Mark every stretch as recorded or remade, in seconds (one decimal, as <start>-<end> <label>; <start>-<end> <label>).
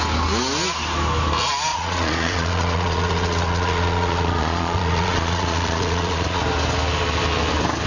0.0-1.7 recorded; 1.7-6.4 remade; 6.4-7.9 recorded